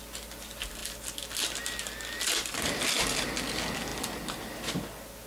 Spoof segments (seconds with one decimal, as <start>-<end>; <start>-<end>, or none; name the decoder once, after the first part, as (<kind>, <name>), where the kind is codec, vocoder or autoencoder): none